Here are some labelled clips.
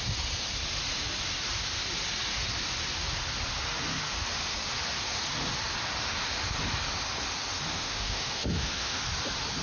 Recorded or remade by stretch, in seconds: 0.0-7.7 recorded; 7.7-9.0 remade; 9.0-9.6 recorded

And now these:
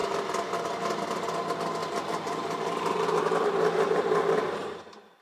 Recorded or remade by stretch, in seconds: 0.0-1.8 recorded; 1.8-4.8 remade; 4.8-5.2 recorded

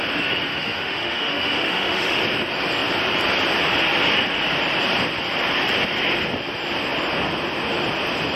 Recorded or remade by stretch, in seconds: 0.0-0.5 recorded; 0.5-2.2 remade; 2.2-8.4 recorded

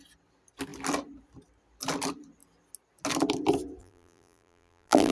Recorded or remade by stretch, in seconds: 0.0-3.8 recorded; 3.8-5.1 remade